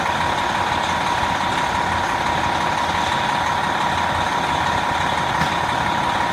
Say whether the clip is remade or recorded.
recorded